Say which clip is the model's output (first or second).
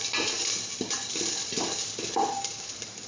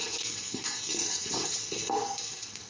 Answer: second